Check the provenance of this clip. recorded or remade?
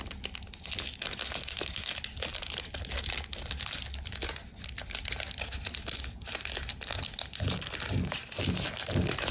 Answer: recorded